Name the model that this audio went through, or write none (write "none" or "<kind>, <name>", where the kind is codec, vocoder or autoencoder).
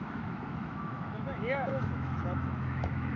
autoencoder, DAC-VAE